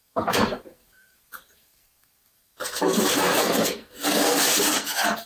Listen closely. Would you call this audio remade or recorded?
remade